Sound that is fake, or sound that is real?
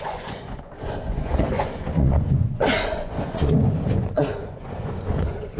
fake